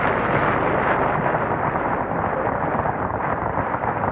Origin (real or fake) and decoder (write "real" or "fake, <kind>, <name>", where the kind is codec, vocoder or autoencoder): real